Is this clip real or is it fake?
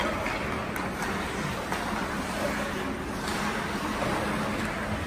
real